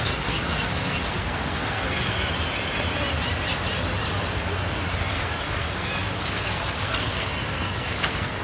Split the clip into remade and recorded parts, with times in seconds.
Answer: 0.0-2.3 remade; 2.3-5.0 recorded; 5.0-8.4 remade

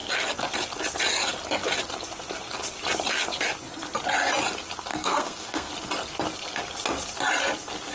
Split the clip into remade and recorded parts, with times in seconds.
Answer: 0.0-4.9 recorded; 4.9-5.7 remade; 5.7-7.9 recorded

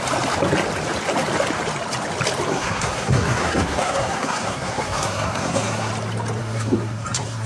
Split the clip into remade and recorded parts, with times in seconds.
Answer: 0.0-2.5 recorded; 2.5-5.9 remade; 5.9-6.4 recorded; 6.4-7.5 remade

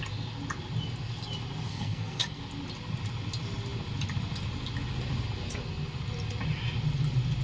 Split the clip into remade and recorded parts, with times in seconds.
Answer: 0.0-1.7 recorded; 1.7-2.4 remade; 2.4-7.4 recorded

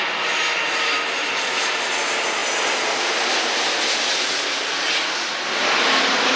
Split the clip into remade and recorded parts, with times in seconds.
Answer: 0.0-6.4 recorded

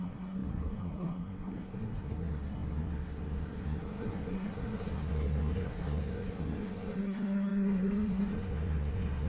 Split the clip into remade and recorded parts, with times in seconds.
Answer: 0.0-9.3 remade